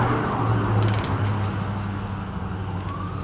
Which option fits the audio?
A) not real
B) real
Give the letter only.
B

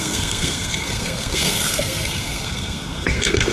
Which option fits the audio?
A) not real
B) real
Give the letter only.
A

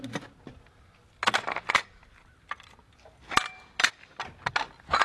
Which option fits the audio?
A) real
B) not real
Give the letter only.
A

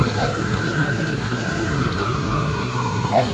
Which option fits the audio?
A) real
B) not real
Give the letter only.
B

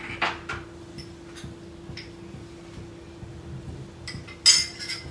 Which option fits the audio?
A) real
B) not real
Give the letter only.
A